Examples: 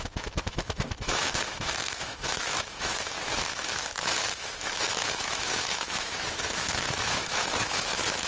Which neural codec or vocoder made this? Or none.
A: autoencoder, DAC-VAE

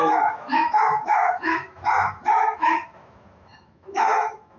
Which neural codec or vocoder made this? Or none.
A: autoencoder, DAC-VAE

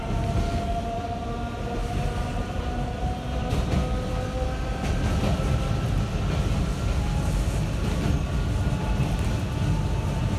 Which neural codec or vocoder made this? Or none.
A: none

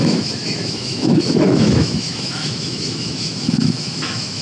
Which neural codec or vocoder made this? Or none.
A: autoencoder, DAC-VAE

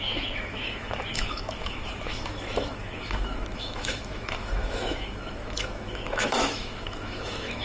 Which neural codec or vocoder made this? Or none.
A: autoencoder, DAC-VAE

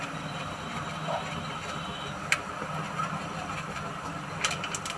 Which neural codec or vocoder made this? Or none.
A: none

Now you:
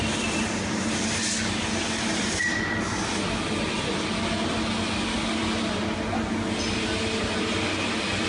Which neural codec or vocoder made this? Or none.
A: none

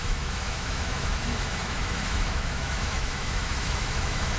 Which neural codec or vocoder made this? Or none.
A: autoencoder, DAC-VAE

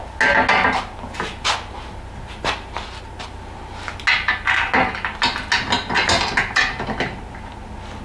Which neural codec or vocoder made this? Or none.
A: none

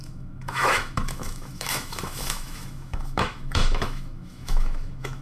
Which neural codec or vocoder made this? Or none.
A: autoencoder, DAC-VAE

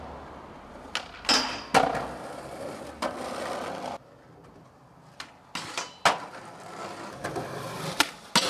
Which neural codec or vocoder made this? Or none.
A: none